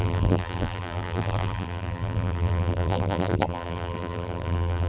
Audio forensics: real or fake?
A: fake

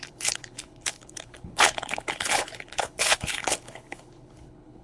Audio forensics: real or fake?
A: fake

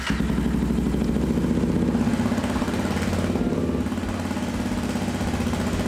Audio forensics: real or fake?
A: real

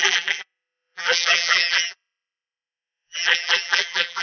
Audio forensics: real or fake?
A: fake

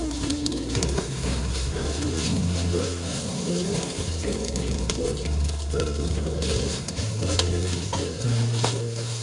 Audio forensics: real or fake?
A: fake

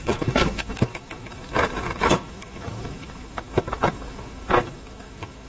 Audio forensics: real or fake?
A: fake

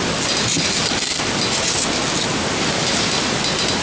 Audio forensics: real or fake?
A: real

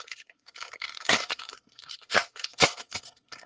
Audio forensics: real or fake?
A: fake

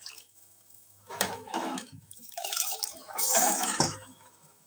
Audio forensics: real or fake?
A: fake